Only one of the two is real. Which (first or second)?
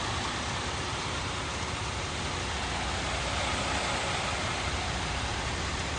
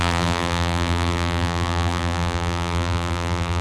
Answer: first